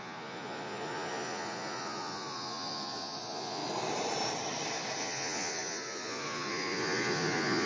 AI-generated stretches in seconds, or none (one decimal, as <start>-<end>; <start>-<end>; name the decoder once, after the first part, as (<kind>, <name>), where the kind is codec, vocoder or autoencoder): 0.0-3.6 (vocoder, Vocos); 5.0-7.7